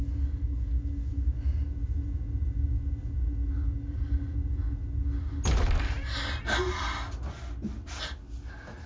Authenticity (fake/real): real